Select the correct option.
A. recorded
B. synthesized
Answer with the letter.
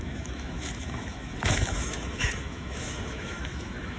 B